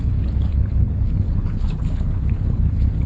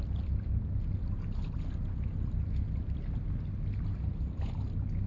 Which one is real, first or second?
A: second